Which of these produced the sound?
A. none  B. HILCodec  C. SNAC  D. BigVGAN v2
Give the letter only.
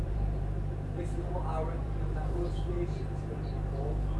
D